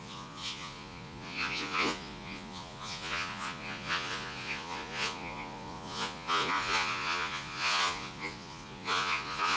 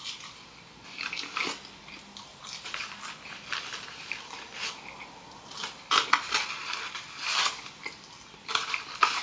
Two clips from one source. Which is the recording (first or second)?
second